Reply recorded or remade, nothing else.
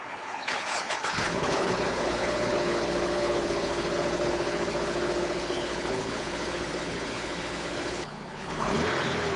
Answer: remade